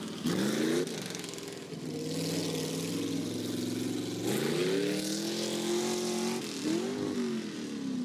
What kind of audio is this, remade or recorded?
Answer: recorded